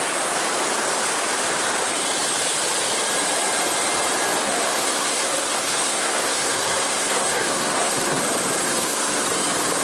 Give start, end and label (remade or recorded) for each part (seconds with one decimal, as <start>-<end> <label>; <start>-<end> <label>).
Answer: 0.0-4.4 recorded; 4.4-8.2 remade; 8.2-8.6 recorded; 8.6-9.3 remade; 9.3-9.8 recorded